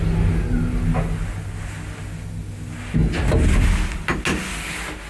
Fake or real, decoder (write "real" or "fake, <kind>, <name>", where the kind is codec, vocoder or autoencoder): real